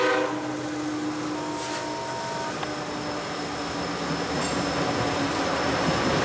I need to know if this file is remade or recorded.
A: recorded